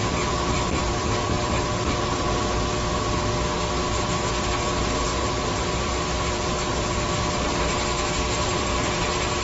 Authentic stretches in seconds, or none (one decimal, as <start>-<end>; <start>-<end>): 1.1-5.1; 7.1-9.4